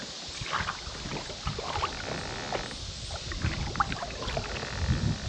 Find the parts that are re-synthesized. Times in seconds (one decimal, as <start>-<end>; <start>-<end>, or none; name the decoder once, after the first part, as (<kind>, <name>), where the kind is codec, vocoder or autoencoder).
none